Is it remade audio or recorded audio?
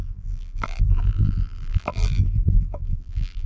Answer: remade